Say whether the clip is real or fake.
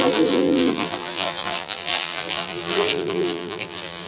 fake